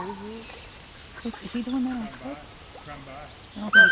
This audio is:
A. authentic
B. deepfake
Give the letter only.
A